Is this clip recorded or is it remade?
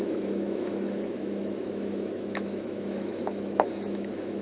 remade